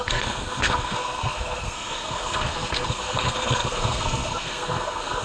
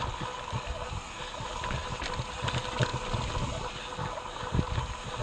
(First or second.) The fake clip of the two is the first